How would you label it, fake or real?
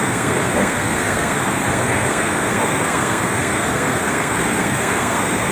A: fake